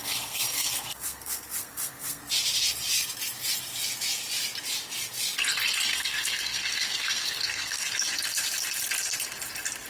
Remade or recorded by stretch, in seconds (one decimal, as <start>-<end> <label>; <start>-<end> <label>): 0.0-2.2 remade; 2.2-5.9 recorded; 5.9-7.9 remade; 7.9-9.9 recorded